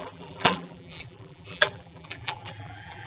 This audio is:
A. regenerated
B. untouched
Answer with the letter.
A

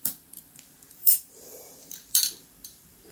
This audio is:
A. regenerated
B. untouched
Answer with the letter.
A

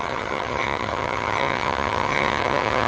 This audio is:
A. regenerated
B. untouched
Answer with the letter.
A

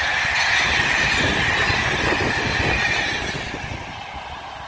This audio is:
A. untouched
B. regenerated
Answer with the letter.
A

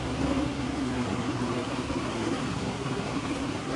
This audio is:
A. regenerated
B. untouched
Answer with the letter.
A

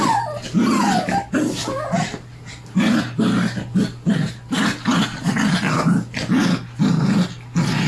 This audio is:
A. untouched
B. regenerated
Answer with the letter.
A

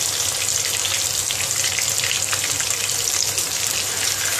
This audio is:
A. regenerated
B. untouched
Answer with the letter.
B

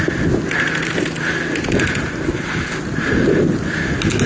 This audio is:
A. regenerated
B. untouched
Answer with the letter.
B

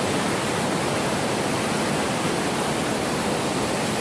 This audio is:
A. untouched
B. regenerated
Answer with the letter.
A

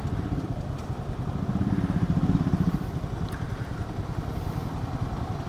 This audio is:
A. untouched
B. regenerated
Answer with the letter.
B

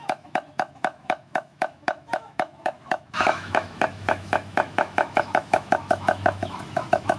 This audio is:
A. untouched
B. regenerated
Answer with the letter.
B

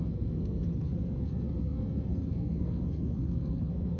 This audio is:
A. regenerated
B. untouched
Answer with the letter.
A